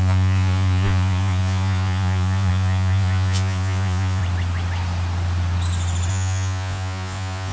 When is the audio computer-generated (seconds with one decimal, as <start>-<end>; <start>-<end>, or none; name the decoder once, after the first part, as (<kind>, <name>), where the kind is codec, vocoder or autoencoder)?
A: 0.0-4.2 (vocoder, Vocos); 6.1-7.5